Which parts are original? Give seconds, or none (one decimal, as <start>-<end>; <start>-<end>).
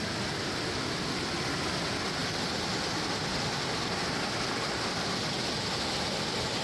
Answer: 0.0-6.6